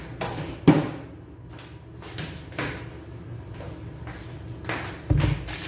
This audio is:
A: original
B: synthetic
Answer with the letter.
A